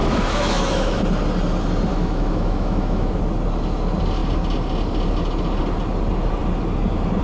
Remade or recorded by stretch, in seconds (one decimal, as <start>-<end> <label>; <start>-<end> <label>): 0.0-1.0 remade; 1.0-1.9 recorded; 1.9-3.2 remade; 3.2-7.2 recorded